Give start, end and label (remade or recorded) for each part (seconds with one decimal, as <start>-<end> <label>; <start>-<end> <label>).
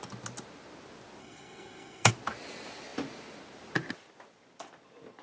0.0-1.2 recorded; 1.2-2.1 remade; 2.1-5.2 recorded